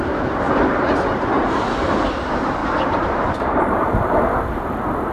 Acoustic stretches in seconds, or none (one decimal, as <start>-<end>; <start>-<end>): 0.0-2.6; 3.6-5.1